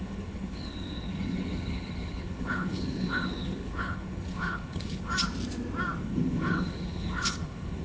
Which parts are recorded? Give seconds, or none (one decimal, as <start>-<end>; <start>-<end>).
5.1-6.0